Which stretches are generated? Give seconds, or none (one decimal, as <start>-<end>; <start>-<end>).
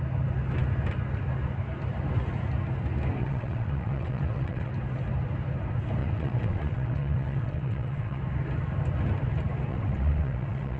3.2-4.7; 6.0-8.2; 9.7-10.8